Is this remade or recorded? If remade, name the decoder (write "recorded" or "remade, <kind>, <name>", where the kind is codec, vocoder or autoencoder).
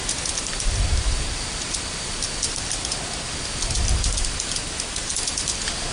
recorded